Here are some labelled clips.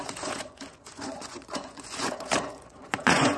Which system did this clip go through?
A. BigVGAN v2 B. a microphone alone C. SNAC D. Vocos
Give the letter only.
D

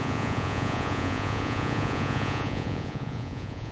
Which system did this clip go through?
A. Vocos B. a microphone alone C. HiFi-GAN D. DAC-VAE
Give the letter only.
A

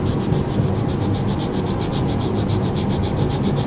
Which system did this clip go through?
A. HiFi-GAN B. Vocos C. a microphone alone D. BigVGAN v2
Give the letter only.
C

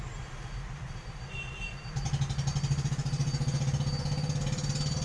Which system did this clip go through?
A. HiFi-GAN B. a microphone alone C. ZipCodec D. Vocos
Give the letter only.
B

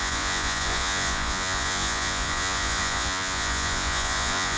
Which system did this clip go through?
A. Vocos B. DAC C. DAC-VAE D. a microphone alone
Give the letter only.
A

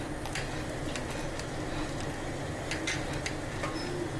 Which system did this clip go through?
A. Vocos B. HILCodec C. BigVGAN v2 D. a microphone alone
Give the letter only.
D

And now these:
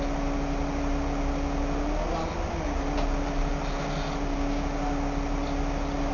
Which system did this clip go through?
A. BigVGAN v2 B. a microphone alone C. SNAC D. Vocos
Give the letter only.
B